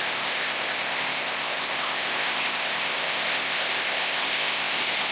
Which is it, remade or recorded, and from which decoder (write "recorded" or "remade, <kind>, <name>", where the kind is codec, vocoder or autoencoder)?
remade, codec, ZipCodec